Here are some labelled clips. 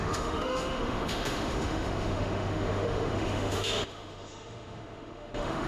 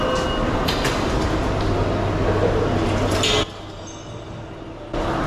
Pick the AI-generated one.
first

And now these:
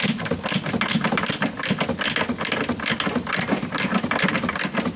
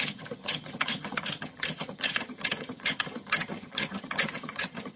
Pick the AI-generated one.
second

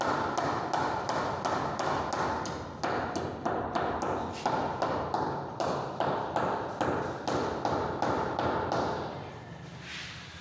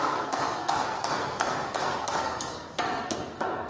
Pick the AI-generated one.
second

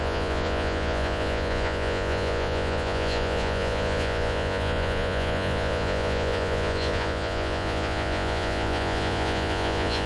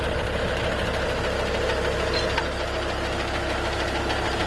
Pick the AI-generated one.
first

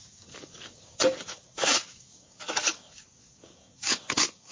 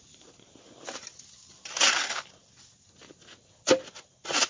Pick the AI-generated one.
first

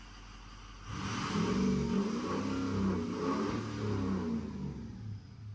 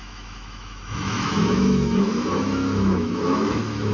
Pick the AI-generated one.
second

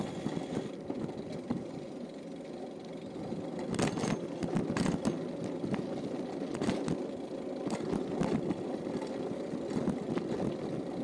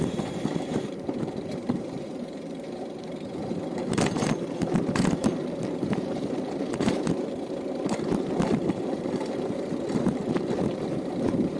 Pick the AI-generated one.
second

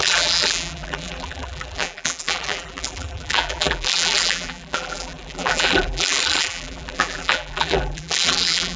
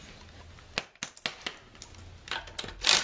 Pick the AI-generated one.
first